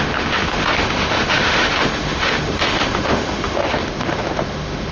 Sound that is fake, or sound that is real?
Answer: fake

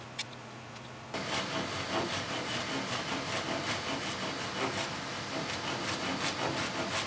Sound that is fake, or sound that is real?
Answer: real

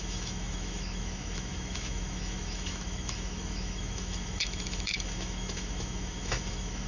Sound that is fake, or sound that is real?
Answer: fake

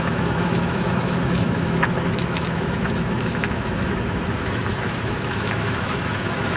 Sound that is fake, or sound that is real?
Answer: fake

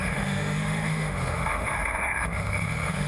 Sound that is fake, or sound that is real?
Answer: fake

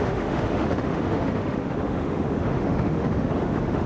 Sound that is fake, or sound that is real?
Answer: fake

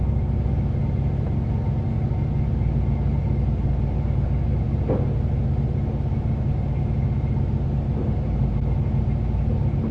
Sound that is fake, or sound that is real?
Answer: real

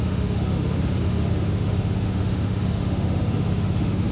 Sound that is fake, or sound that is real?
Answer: fake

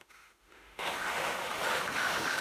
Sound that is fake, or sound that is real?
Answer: fake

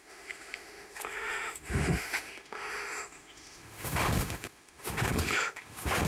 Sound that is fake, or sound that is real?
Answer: fake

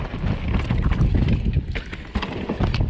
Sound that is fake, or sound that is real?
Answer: real